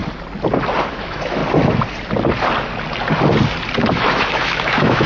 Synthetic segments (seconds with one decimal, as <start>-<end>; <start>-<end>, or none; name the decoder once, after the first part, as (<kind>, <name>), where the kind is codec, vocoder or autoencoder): 0.9-1.4 (autoencoder, DAC-VAE); 3.9-5.1